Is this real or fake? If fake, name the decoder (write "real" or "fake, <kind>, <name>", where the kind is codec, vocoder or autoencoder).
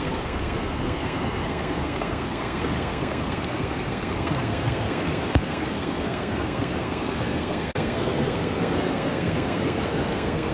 fake, codec, SNAC